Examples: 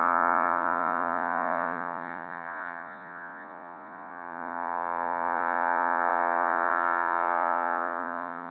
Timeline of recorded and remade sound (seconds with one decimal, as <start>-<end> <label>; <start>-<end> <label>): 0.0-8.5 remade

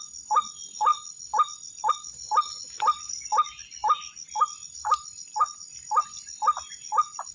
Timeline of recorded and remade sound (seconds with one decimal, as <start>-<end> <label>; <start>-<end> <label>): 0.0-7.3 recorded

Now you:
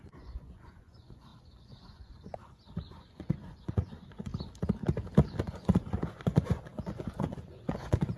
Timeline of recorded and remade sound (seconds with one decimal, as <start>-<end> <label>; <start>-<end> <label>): 0.0-4.3 remade; 4.3-5.4 recorded; 5.4-8.2 remade